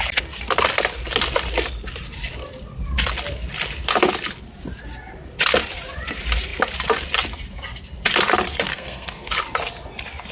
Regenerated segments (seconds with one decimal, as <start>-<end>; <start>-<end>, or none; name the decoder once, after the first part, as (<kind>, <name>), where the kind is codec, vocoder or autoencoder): 8.7-9.3 (codec, SNAC)